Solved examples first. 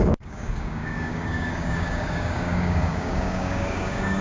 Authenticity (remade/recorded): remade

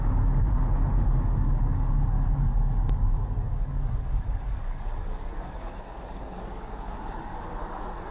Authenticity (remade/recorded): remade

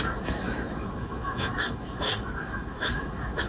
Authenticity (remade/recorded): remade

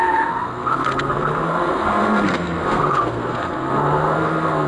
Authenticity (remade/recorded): remade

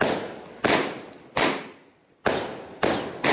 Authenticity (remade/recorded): recorded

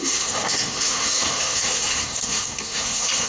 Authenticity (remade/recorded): remade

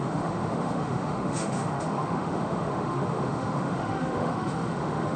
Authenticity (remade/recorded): remade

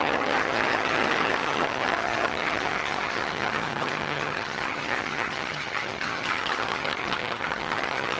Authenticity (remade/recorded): remade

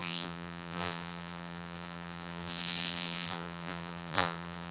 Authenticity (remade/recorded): remade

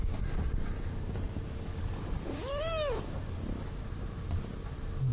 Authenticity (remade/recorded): recorded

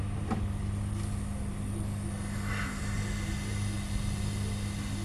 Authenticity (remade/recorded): recorded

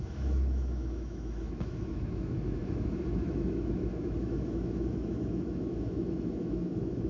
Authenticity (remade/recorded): remade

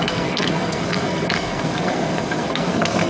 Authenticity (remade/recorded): remade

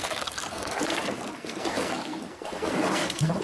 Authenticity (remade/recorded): remade